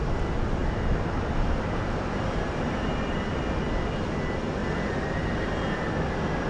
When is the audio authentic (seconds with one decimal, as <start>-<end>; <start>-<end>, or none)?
0.0-0.6; 2.9-4.6; 5.3-6.5